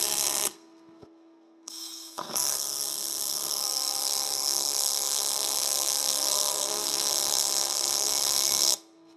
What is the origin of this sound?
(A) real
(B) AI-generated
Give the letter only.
B